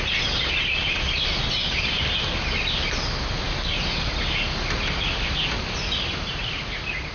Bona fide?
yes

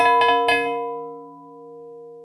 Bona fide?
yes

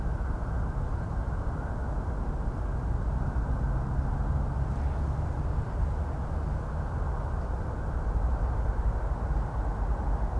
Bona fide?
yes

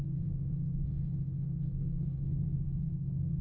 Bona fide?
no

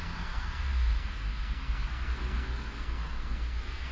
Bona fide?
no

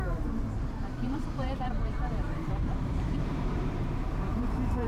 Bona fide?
no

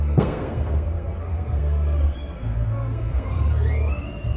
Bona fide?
no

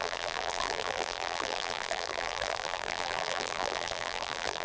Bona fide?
no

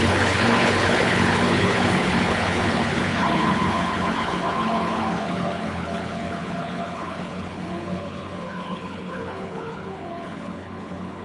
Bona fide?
no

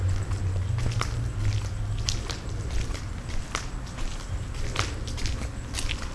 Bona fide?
yes